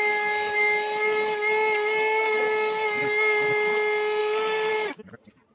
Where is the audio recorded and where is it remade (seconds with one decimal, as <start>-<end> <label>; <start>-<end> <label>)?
0.0-4.2 recorded; 4.2-4.7 remade; 4.7-5.5 recorded